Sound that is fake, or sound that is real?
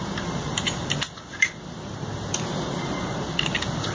real